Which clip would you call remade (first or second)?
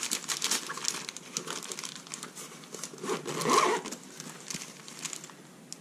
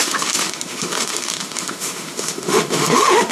second